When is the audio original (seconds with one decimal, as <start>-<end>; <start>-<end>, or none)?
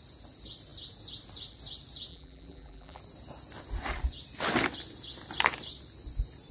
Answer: 0.0-2.1; 3.0-6.5